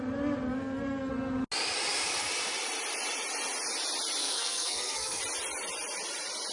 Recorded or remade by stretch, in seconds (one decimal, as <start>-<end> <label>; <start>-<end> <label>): 0.0-0.5 recorded; 0.5-1.1 remade; 1.1-4.2 recorded; 4.2-5.2 remade; 5.2-6.5 recorded